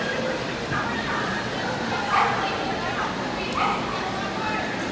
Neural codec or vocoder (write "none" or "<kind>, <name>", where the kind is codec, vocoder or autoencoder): none